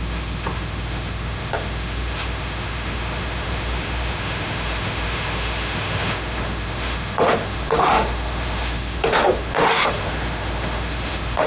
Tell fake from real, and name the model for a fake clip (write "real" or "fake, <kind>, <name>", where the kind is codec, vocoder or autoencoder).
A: fake, autoencoder, DAC-VAE